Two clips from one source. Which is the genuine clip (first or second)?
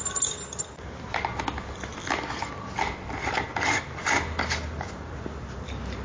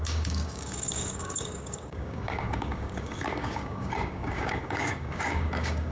first